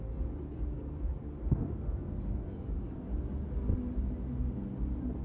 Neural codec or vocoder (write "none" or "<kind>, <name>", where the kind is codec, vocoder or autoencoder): none